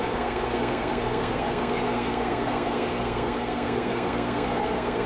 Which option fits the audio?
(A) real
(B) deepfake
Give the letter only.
B